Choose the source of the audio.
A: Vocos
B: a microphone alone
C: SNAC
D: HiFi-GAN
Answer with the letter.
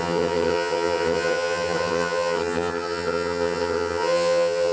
D